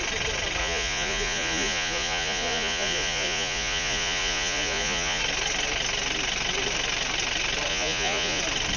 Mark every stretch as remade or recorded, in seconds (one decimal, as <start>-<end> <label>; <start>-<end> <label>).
0.0-0.6 recorded; 0.6-5.2 remade; 5.2-7.7 recorded; 7.7-8.4 remade; 8.4-8.8 recorded